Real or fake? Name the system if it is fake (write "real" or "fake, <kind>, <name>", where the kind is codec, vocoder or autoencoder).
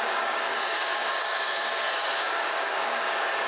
fake, codec, DAC